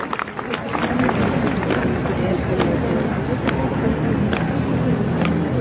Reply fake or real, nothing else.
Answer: real